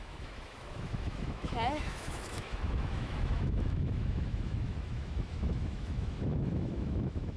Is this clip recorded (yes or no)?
no